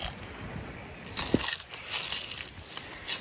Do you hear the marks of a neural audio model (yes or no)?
no